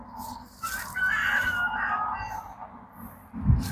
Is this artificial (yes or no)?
no